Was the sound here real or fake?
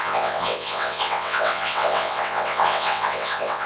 fake